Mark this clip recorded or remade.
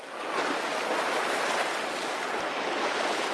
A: recorded